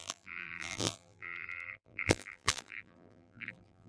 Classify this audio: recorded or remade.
remade